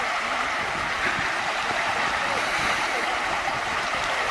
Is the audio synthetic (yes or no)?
yes